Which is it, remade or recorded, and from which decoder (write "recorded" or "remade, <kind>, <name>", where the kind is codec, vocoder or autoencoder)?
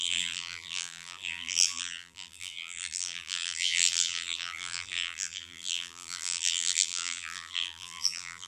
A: remade, vocoder, BigVGAN v2